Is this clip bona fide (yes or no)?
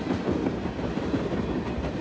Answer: yes